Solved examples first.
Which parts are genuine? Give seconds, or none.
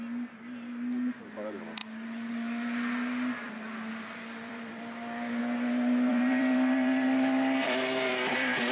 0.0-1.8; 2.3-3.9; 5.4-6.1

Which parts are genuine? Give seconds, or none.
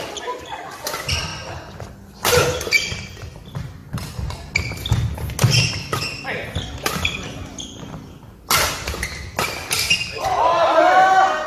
0.0-11.5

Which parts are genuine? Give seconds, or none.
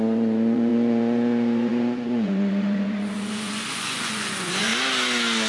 4.7-5.5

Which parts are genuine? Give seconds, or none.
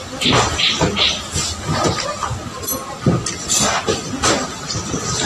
0.0-5.3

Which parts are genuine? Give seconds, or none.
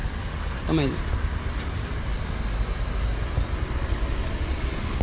0.0-5.0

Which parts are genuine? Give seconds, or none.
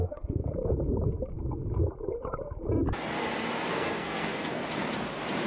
0.4-3.7; 4.6-5.5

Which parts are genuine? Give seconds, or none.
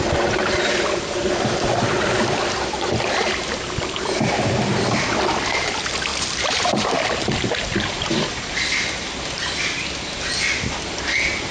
0.0-11.5